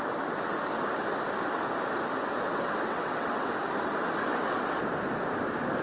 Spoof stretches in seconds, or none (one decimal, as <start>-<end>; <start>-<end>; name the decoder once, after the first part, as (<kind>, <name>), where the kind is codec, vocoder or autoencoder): 2.5-3.6 (vocoder, WaveNeXt)

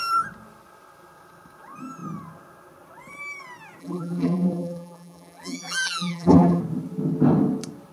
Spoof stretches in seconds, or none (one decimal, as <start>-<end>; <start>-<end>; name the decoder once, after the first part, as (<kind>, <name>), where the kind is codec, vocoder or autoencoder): 3.8-6.6 (vocoder, BigVGAN v2)

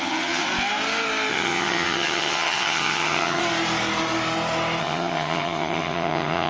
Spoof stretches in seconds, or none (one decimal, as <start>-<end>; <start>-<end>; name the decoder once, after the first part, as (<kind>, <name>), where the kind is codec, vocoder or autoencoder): 0.0-0.4 (vocoder, HiFi-GAN); 1.3-3.4; 4.8-6.5

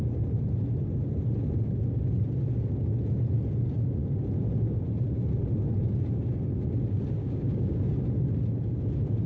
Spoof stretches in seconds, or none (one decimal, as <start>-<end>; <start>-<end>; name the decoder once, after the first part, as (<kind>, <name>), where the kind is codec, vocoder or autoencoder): 7.2-7.8 (codec, DAC)

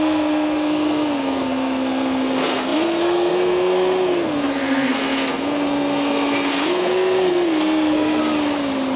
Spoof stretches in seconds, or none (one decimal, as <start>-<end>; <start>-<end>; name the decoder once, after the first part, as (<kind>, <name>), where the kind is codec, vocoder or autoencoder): 0.0-8.2 (codec, SNAC)